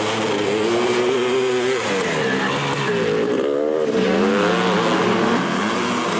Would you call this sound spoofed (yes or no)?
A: no